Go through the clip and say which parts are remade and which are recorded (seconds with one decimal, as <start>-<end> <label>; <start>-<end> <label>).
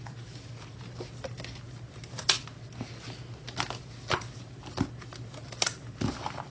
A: 0.0-6.5 recorded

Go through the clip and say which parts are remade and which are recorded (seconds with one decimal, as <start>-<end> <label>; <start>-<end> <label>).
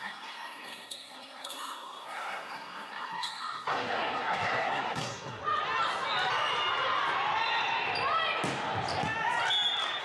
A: 0.0-5.4 remade; 5.4-10.0 recorded